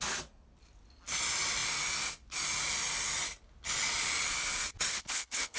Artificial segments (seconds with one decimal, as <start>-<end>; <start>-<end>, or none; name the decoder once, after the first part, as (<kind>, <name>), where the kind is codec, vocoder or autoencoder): 4.9-5.6 (codec, HILCodec)